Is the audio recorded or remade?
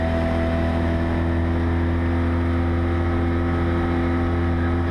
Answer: recorded